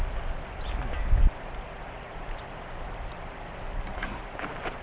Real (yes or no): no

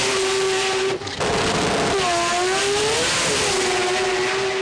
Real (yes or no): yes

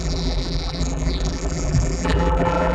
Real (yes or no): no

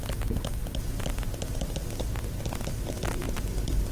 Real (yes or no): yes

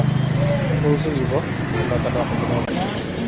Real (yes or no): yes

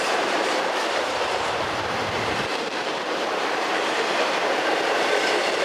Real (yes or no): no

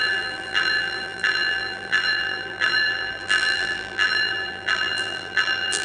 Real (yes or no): no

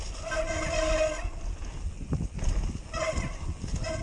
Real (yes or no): yes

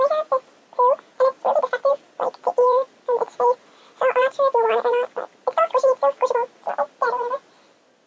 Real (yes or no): no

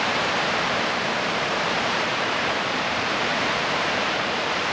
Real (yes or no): no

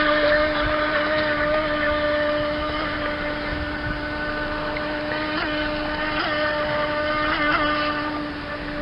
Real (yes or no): no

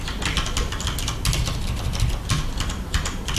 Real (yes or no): yes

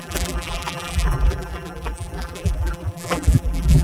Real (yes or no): no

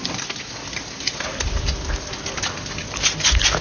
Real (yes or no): yes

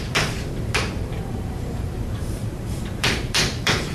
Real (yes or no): no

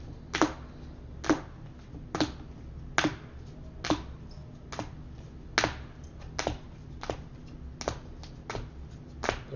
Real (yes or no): yes